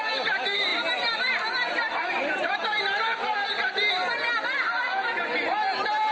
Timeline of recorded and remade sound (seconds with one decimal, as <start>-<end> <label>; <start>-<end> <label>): 0.0-6.1 recorded